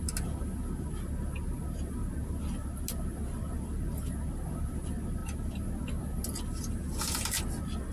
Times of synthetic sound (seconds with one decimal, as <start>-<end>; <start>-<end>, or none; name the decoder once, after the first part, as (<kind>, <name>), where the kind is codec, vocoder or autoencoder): none